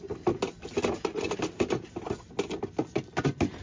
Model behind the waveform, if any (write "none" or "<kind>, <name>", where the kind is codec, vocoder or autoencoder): none